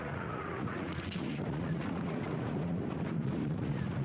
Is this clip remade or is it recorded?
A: remade